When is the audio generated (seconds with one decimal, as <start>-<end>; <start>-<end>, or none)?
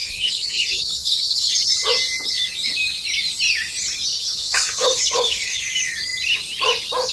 0.0-1.5; 4.1-5.6